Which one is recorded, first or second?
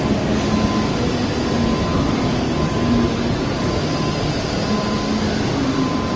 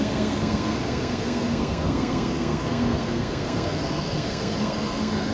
first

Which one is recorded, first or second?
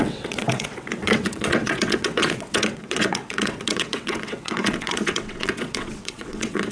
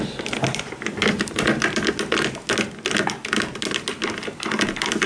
second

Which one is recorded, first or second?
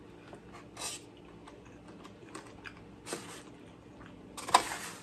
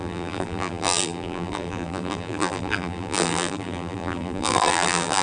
first